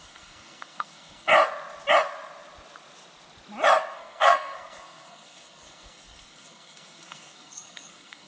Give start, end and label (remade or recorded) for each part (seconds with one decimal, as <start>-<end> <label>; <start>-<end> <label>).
0.0-1.3 remade; 1.3-3.9 recorded; 3.9-8.3 remade